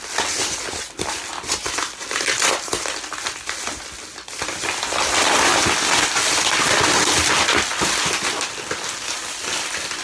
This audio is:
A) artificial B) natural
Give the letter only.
B